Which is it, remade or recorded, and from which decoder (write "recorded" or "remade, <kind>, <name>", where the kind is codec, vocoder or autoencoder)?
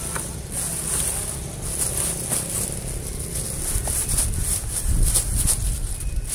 recorded